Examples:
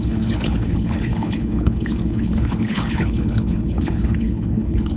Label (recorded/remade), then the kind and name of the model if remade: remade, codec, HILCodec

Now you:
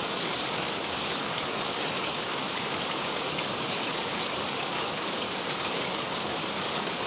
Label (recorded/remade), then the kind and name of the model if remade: remade, codec, DAC